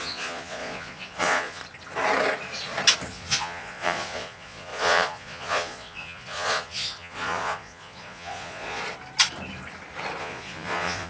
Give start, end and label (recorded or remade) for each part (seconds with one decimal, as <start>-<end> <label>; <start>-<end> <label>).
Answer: 0.0-1.6 remade; 1.6-3.1 recorded; 3.1-8.8 remade; 8.8-10.2 recorded; 10.2-11.1 remade

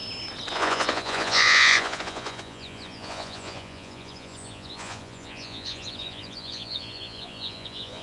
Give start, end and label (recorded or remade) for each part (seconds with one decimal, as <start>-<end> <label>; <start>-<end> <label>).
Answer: 0.0-0.5 recorded; 0.5-8.0 remade

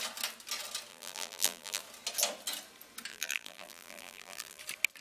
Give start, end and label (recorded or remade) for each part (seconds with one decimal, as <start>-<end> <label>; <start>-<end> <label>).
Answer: 0.0-0.9 recorded; 0.9-1.8 remade; 1.8-3.1 recorded; 3.1-4.6 remade; 4.6-5.0 recorded

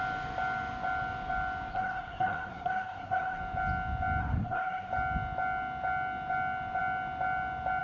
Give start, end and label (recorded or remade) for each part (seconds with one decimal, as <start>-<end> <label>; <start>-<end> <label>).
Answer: 0.0-1.7 recorded; 1.7-3.4 remade; 3.4-4.2 recorded; 4.2-4.9 remade; 4.9-7.8 recorded

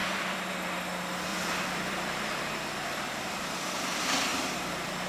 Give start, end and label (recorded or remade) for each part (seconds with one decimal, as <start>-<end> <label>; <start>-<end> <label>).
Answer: 0.0-0.5 remade; 0.5-1.3 recorded; 1.3-3.4 remade; 3.4-4.3 recorded; 4.3-5.1 remade

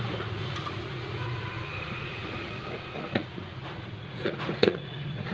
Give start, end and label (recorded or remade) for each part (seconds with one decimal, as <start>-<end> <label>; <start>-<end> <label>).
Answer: 0.0-5.3 remade

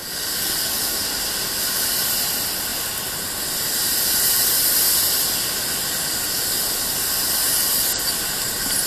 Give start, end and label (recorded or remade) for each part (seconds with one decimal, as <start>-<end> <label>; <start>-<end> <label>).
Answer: 0.0-1.0 remade; 1.0-8.9 recorded

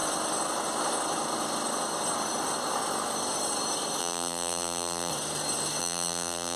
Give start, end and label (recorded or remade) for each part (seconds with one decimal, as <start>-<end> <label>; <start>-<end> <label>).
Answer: 0.0-4.0 recorded; 4.0-5.1 remade; 5.1-5.8 recorded; 5.8-6.6 remade